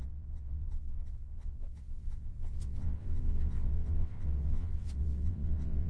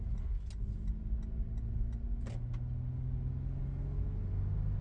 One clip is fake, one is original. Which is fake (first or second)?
first